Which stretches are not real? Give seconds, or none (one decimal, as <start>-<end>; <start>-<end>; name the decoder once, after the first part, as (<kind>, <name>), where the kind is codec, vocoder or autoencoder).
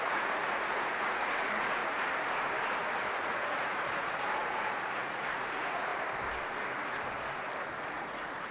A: 0.0-1.8 (vocoder, Vocos); 3.2-5.9; 7.8-8.5